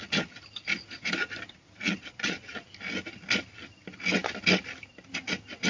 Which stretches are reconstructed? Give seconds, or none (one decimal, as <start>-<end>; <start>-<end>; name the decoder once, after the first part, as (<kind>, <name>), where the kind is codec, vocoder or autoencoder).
1.8-2.5 (vocoder, Vocos)